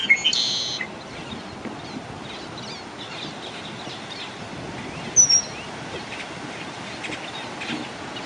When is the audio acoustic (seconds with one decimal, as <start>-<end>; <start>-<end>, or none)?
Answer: 0.0-8.3